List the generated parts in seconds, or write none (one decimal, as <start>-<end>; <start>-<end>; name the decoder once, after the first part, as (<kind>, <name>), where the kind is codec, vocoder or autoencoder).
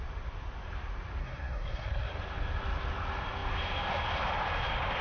1.2-2.2 (codec, SNAC)